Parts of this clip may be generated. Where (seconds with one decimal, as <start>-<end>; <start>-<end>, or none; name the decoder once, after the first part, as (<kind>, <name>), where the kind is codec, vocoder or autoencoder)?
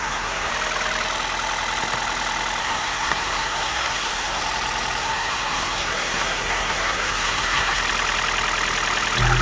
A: 0.0-0.5 (codec, SNAC); 2.6-4.4; 5.0-7.8